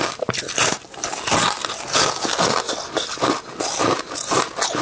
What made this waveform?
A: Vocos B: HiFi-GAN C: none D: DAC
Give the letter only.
C